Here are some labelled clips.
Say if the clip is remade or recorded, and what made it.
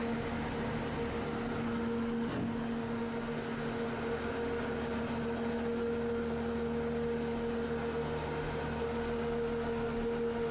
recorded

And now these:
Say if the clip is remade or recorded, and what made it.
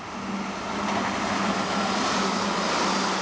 recorded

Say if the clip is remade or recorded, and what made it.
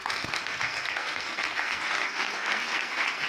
remade, codec, SNAC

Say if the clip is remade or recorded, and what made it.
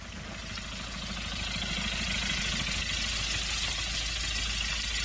recorded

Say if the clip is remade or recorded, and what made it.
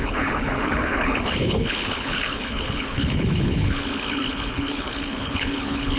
remade, codec, HILCodec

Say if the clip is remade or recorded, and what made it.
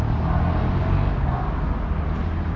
recorded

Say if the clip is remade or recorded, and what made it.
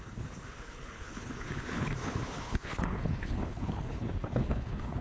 remade, codec, HILCodec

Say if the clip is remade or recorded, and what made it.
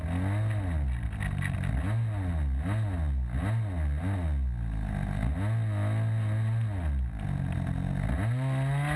recorded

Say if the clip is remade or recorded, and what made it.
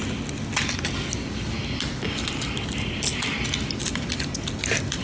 recorded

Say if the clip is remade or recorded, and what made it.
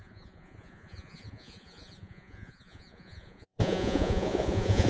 remade, vocoder, Vocos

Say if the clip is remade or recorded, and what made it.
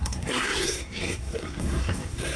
remade, codec, SNAC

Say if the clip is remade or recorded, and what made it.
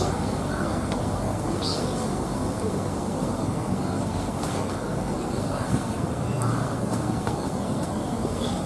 remade, codec, SNAC